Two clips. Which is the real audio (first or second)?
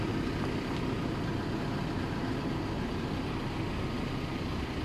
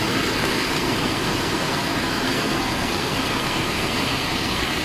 first